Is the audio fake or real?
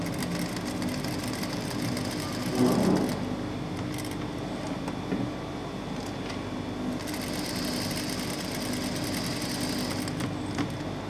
real